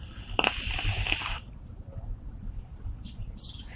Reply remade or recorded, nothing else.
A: remade